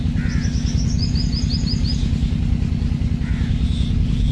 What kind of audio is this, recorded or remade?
recorded